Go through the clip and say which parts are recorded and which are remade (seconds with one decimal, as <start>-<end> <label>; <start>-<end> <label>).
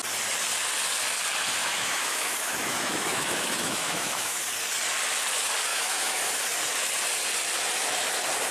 0.0-1.6 recorded; 1.6-4.4 remade; 4.4-5.7 recorded; 5.7-6.2 remade; 6.2-8.5 recorded